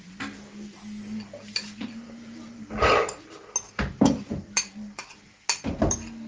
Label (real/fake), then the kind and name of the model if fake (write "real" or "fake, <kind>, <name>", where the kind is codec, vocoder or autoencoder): real